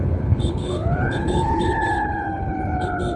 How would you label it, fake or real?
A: fake